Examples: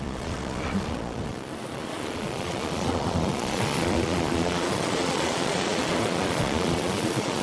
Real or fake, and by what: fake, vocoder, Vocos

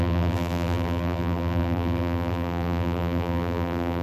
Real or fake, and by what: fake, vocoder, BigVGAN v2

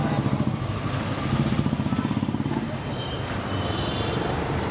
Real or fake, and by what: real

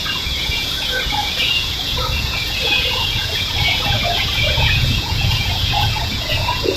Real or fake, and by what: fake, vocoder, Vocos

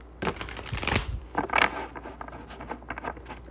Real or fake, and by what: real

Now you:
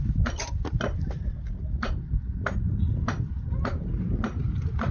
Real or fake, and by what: real